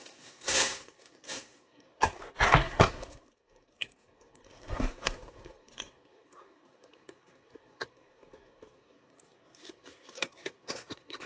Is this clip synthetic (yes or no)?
yes